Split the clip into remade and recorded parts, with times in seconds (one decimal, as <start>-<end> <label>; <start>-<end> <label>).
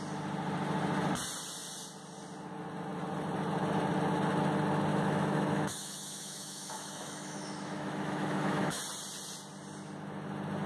0.0-4.9 recorded; 4.9-8.8 remade; 8.8-10.7 recorded